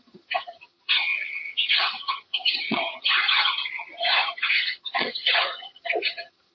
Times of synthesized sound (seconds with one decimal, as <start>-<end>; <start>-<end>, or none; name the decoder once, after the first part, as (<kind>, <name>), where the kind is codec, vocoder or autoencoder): 0.0-6.5 (vocoder, HiFi-GAN)